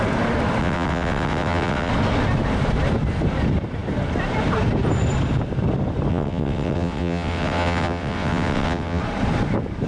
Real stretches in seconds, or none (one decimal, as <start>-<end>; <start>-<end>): 0.0-0.6; 1.9-6.1; 9.0-9.9